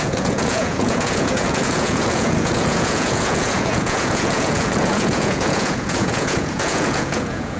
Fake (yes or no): yes